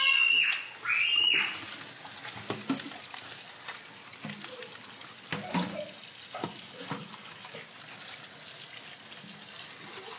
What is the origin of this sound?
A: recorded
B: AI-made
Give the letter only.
A